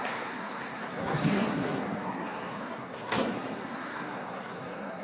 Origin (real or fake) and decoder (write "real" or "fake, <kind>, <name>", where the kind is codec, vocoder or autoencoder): fake, codec, SNAC